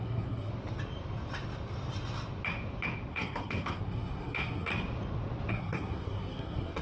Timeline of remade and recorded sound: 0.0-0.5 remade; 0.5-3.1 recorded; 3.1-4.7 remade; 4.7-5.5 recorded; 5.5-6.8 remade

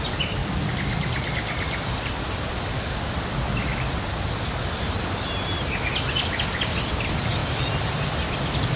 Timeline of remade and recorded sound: 0.0-0.4 remade; 0.4-1.9 recorded; 1.9-3.7 remade; 3.7-6.9 recorded; 6.9-8.8 remade

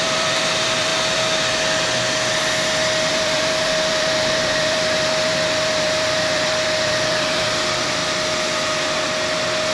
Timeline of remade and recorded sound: 0.0-0.9 remade; 0.9-3.1 recorded; 3.1-8.0 remade; 8.0-9.7 recorded

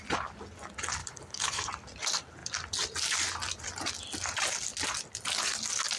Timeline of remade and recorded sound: 0.0-1.0 recorded; 1.0-1.7 remade; 1.7-6.0 recorded

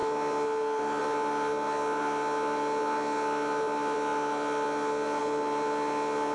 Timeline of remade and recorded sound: 0.0-6.3 recorded

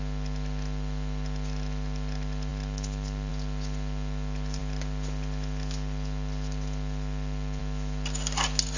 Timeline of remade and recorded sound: 0.0-8.8 recorded

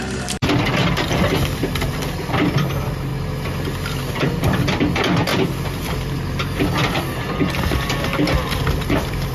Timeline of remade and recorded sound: 0.0-3.1 remade; 3.1-4.1 recorded; 4.1-5.3 remade; 5.3-5.9 recorded; 5.9-9.3 remade

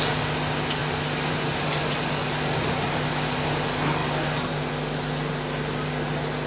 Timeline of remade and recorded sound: 0.0-6.5 recorded